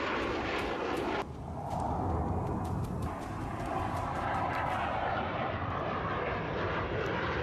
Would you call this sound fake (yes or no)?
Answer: yes